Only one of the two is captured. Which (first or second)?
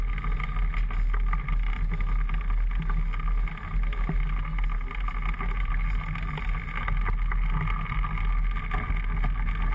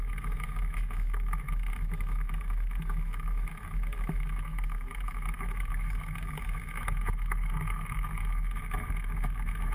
first